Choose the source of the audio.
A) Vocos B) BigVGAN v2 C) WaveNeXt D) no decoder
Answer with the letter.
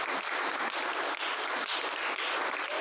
D